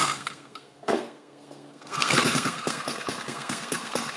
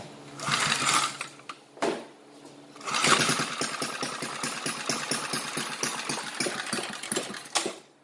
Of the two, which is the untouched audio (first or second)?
second